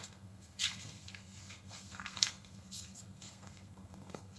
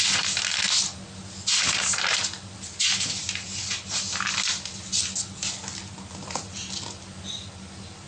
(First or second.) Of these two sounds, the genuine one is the second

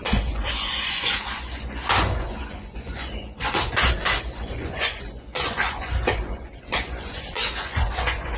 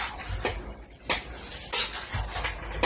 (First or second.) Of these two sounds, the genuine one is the second